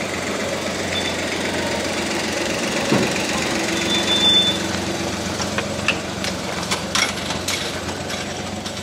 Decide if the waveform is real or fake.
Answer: fake